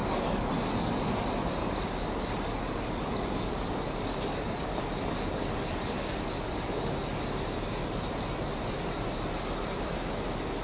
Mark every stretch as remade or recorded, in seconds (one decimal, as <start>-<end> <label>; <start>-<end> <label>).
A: 0.0-0.5 remade; 0.5-1.6 recorded; 1.6-4.8 remade; 4.8-10.6 recorded